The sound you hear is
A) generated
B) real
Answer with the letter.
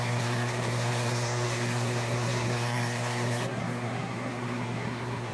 A